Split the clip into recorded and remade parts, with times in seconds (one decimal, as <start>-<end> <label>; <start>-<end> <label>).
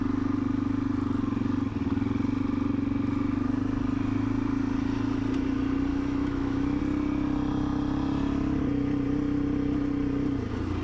0.0-5.9 recorded; 5.9-6.8 remade; 6.8-10.8 recorded